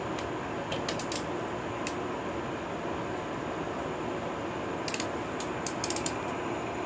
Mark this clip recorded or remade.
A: recorded